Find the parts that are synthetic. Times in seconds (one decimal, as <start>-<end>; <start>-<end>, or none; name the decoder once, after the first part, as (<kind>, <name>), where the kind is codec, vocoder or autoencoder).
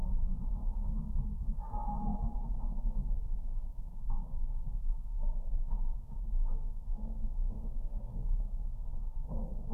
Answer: 0.0-9.7 (codec, SNAC)